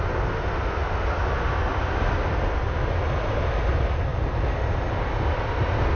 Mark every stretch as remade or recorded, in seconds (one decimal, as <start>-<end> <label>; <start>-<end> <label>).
0.0-0.8 recorded; 0.8-3.0 remade; 3.0-6.0 recorded